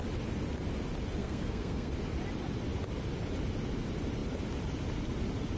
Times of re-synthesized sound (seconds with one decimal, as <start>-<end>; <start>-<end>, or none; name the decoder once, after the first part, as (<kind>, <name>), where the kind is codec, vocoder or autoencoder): 1.2-1.9 (codec, SNAC)